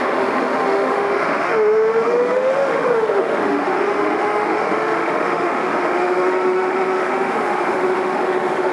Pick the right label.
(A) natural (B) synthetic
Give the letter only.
B